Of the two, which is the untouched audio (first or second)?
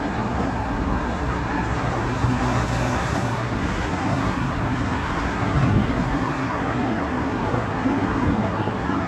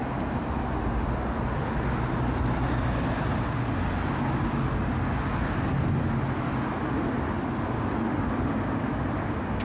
second